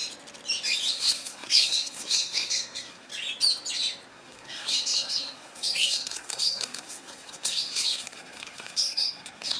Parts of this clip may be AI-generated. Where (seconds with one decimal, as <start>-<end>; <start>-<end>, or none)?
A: 0.9-3.1; 4.1-9.6